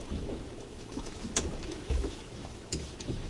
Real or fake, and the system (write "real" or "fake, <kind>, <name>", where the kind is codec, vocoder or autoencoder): fake, autoencoder, DAC-VAE